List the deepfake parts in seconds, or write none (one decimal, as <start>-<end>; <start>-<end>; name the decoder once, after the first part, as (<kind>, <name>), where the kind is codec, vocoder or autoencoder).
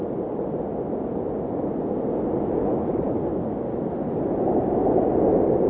none